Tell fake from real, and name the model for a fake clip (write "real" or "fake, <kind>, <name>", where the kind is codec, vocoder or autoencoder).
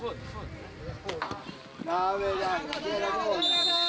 real